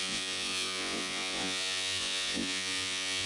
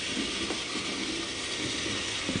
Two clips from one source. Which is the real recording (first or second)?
second